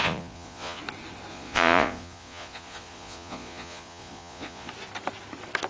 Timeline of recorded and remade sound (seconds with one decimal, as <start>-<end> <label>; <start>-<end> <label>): 0.0-0.8 remade; 0.8-1.3 recorded; 1.3-4.7 remade; 4.7-5.7 recorded